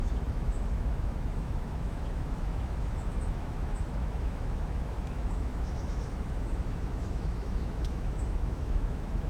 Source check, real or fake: fake